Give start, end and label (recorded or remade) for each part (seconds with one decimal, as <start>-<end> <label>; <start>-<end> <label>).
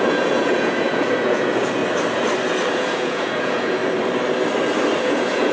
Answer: 0.0-1.8 remade; 1.8-2.7 recorded; 2.7-3.8 remade; 3.8-5.0 recorded; 5.0-5.5 remade